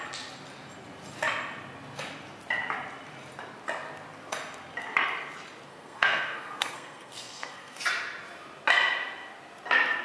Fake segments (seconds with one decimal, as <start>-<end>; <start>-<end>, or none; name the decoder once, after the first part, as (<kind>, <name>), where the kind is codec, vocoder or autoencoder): 5.7-7.8 (codec, SNAC)